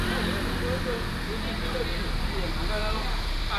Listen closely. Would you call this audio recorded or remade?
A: recorded